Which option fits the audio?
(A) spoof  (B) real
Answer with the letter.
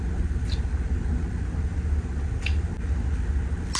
B